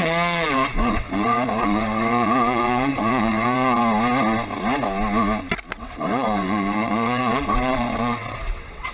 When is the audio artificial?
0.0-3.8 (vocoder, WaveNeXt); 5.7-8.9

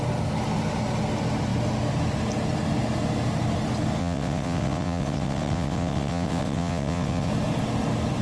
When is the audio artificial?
4.0-7.3 (vocoder, WaveNeXt)